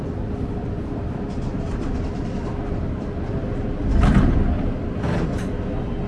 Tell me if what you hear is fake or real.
real